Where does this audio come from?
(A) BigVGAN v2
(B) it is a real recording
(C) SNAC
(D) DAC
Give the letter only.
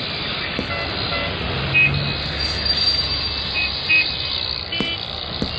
B